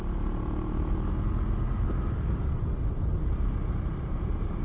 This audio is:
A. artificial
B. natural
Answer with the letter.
B